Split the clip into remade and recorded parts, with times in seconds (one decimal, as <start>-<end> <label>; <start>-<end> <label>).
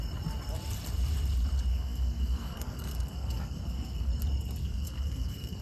0.0-1.7 recorded; 1.7-4.1 remade; 4.1-4.6 recorded; 4.6-5.6 remade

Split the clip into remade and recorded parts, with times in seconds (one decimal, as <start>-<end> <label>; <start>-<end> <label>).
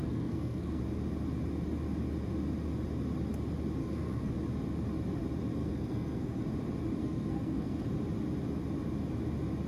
0.0-0.8 remade; 0.8-3.8 recorded; 3.8-4.3 remade; 4.3-5.6 recorded; 5.6-6.4 remade; 6.4-7.0 recorded; 7.0-7.9 remade; 7.9-9.7 recorded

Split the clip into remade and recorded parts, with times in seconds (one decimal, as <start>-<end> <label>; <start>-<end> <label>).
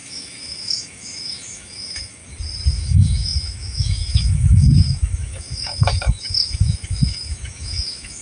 0.0-2.2 remade; 2.2-2.7 recorded; 2.7-8.2 remade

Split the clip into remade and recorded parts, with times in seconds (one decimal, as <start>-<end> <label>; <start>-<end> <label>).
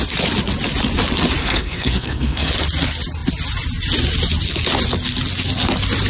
0.0-1.4 recorded; 1.4-2.5 remade; 2.5-6.1 recorded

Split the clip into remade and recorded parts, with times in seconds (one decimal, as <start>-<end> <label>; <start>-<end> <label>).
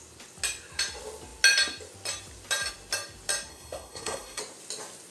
0.0-3.5 recorded; 3.5-4.4 remade; 4.4-5.1 recorded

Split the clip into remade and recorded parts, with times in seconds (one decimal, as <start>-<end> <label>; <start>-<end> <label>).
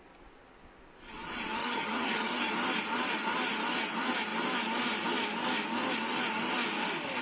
0.0-1.6 recorded; 1.6-2.5 remade; 2.5-7.2 recorded